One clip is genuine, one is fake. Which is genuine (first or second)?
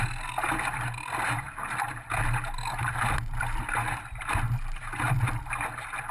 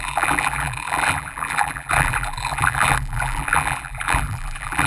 first